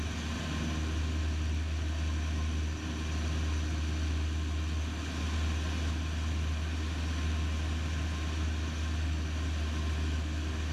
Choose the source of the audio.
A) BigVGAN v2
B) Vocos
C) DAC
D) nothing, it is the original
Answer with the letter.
D